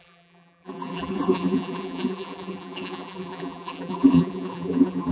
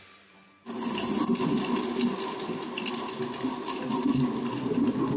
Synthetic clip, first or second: first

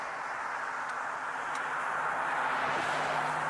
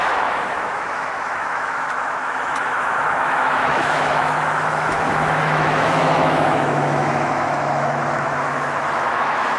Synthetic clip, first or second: second